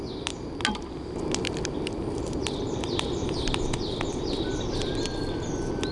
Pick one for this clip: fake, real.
real